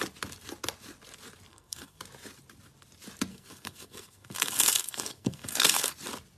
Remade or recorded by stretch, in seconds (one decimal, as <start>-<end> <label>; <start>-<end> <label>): 0.0-1.5 recorded; 1.5-2.0 remade; 2.0-3.3 recorded; 3.3-5.9 remade; 5.9-6.4 recorded